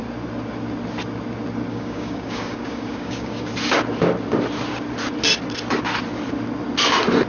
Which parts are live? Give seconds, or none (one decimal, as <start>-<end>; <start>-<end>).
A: 0.0-1.7; 3.5-7.3